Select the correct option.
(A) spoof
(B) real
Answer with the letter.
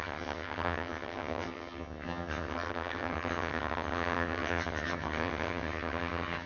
A